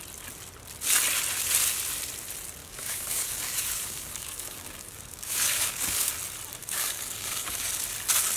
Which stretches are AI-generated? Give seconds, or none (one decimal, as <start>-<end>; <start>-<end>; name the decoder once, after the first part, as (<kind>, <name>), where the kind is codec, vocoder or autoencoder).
2.6-6.1 (codec, DAC); 6.6-7.7